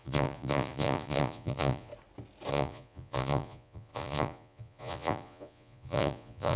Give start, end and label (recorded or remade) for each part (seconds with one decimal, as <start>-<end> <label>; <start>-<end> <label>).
0.0-1.9 remade; 1.9-2.5 recorded; 2.5-6.6 remade